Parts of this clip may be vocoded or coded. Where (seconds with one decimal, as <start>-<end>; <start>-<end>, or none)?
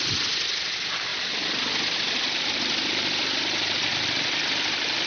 none